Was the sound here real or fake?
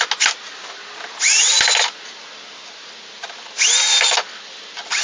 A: real